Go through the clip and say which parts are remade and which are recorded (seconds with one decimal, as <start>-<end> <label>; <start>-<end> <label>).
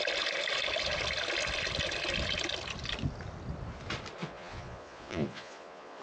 0.0-4.2 recorded; 4.2-6.0 remade